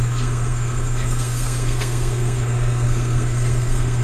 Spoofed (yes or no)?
yes